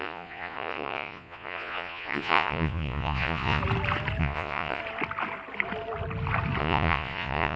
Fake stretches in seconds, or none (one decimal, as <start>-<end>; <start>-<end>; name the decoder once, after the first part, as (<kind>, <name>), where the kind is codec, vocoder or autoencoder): 0.0-3.6 (vocoder, Vocos); 4.2-4.8; 6.6-7.6